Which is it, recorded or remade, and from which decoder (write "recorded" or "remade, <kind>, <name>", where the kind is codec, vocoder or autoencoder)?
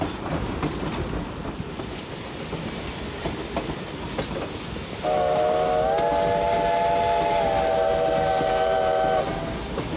recorded